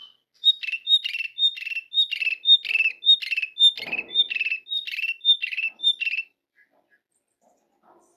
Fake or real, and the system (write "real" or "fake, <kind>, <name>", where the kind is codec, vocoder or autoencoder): real